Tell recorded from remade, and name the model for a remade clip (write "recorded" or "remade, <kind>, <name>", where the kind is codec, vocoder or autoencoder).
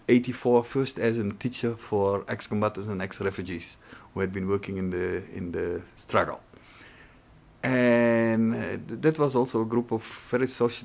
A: recorded